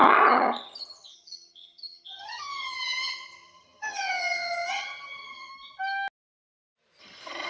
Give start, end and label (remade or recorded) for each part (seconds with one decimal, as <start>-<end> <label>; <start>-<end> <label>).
0.0-5.5 remade; 5.5-7.0 recorded; 7.0-7.5 remade